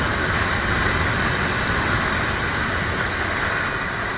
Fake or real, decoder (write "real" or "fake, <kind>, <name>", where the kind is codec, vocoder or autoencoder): real